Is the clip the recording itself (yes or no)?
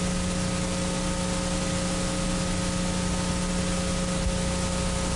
yes